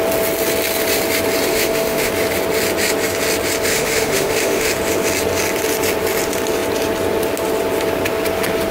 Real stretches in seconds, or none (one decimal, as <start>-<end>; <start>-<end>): 0.0-1.5; 2.1-3.7; 4.7-8.7